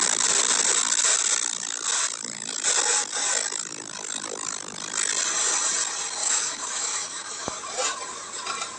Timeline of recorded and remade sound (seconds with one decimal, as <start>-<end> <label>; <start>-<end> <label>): 0.0-6.2 recorded; 6.2-7.6 remade; 7.6-8.8 recorded

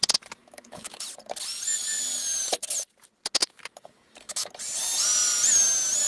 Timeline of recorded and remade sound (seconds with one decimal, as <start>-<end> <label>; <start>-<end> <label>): 0.0-0.4 recorded; 0.4-1.0 remade; 1.0-3.4 recorded; 3.4-4.5 remade; 4.5-6.1 recorded

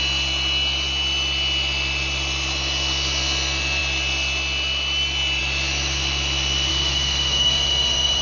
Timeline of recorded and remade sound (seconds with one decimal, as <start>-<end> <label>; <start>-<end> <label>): 0.0-6.7 recorded; 6.7-8.2 remade

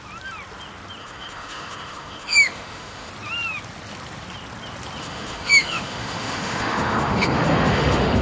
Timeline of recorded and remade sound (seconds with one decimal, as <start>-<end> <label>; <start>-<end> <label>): 0.0-1.0 recorded; 1.0-3.1 remade; 3.1-5.0 recorded; 5.0-8.2 remade